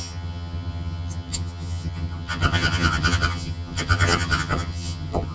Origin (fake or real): fake